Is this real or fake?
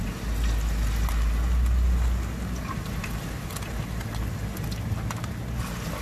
real